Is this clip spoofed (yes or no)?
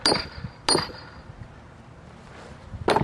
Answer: no